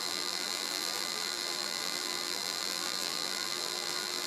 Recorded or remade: remade